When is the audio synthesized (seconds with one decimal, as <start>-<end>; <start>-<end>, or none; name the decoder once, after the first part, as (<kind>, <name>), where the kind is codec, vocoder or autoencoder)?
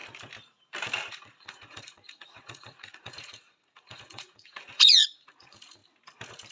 1.1-5.8 (vocoder, Vocos)